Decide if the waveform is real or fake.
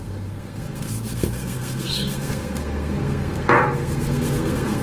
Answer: fake